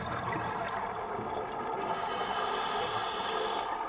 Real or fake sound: real